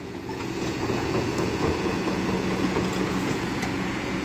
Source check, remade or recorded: remade